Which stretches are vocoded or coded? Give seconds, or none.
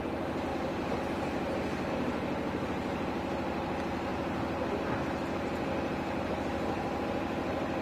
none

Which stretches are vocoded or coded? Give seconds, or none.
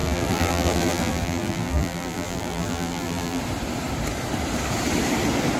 0.0-3.4 (vocoder, BigVGAN v2)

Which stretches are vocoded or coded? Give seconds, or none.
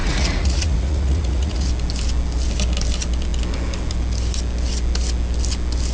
0.0-1.7 (vocoder, Vocos)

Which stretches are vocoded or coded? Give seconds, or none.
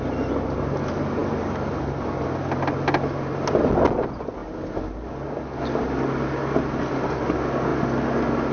none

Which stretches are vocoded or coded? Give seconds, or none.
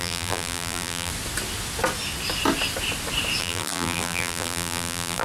0.0-1.1 (vocoder, BigVGAN v2); 3.4-5.2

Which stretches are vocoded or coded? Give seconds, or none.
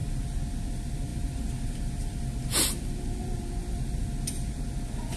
none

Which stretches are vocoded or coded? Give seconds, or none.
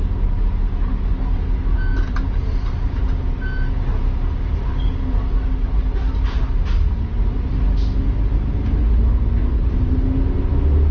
none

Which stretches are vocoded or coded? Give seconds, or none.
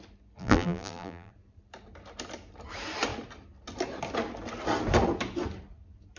0.4-1.3 (vocoder, BigVGAN v2)